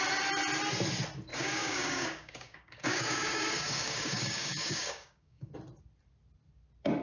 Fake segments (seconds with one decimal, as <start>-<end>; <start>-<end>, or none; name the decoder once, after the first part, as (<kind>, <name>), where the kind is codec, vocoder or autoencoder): 1.3-5.5 (codec, DAC)